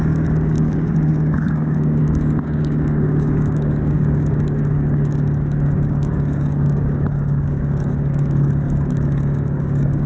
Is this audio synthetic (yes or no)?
yes